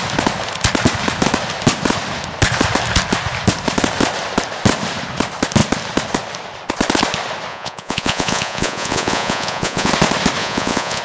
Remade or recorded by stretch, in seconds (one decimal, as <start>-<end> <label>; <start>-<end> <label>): 0.0-7.5 recorded; 7.5-9.9 remade; 9.9-10.4 recorded; 10.4-11.0 remade